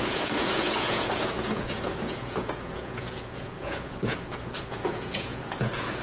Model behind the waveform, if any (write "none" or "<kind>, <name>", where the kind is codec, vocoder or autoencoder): vocoder, Vocos